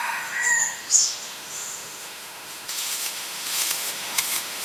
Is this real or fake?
fake